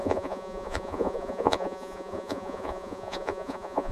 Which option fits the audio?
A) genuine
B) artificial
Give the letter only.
B